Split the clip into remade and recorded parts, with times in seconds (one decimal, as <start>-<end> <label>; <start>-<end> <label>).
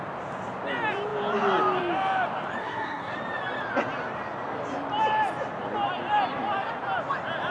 0.0-2.6 recorded; 2.6-3.1 remade; 3.1-7.5 recorded